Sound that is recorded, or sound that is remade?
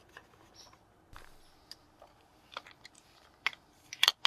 recorded